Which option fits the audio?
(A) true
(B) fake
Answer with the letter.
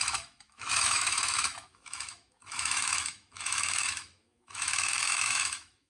B